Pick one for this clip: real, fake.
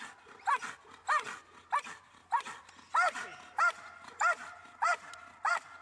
real